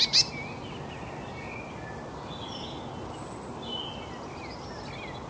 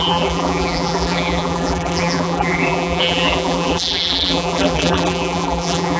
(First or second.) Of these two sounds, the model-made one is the second